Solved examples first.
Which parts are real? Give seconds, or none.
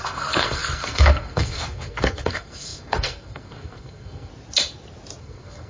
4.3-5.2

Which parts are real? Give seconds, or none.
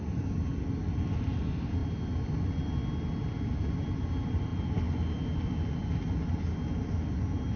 0.0-7.6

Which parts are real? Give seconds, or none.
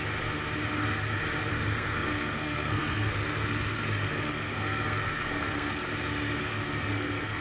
0.0-1.4; 5.8-6.4